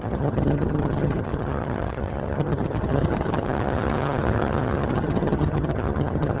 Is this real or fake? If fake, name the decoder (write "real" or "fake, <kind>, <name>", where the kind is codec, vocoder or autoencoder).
fake, vocoder, HiFi-GAN